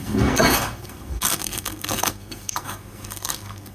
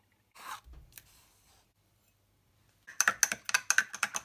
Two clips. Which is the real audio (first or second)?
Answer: second